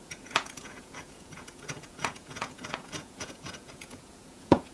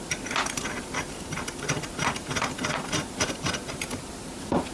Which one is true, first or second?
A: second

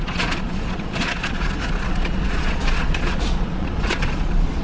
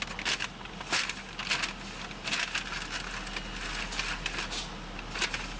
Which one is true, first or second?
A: second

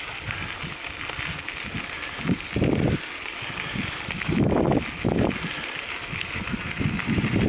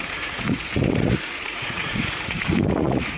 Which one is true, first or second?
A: first